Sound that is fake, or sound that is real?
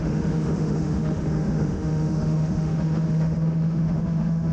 fake